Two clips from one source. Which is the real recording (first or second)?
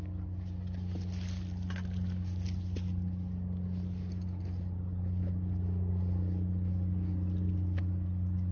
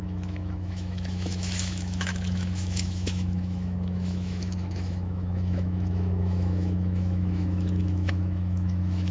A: first